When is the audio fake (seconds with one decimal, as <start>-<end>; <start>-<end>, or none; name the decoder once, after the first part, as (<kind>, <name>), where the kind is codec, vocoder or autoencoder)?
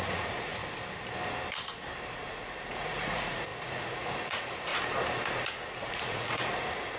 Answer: 0.0-0.6 (vocoder, Vocos); 2.1-4.7; 5.8-7.0